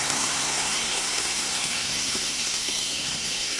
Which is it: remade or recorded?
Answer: remade